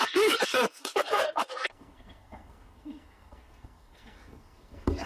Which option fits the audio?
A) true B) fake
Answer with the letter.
B